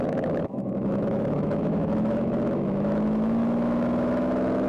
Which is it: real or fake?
fake